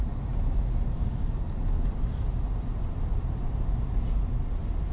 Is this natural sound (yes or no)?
yes